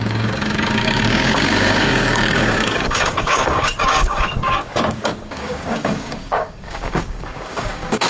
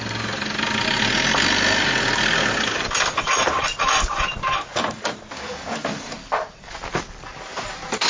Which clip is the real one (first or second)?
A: second